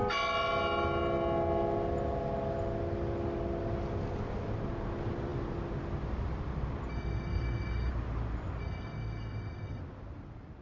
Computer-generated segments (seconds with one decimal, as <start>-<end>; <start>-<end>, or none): 6.9-7.9; 8.6-9.8